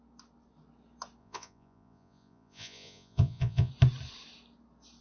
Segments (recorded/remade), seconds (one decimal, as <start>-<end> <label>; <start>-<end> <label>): 0.0-1.2 recorded; 1.2-3.7 remade; 3.7-5.0 recorded